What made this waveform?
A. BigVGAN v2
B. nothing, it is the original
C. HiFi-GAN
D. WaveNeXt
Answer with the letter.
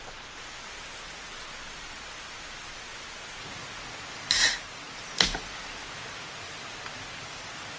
B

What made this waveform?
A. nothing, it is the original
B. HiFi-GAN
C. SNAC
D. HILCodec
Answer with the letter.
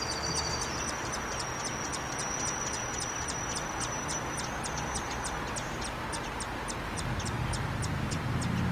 A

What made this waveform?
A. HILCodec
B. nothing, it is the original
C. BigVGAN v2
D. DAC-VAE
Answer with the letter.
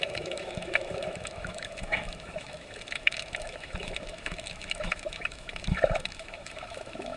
D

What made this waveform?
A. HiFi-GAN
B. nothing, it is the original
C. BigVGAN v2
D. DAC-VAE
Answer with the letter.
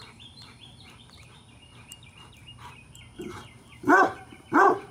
C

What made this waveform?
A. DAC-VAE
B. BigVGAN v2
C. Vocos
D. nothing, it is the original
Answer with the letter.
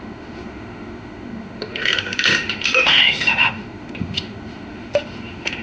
A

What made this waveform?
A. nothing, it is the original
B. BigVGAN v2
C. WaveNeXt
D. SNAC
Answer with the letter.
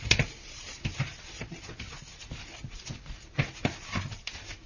A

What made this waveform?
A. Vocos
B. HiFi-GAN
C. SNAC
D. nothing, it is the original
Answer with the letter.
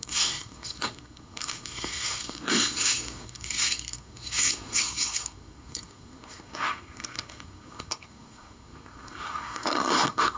C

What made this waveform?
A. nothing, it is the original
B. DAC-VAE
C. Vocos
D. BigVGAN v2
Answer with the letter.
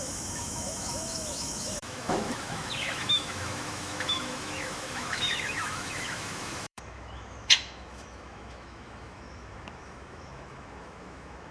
B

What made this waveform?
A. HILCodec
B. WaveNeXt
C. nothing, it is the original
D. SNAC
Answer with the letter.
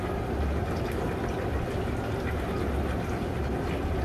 C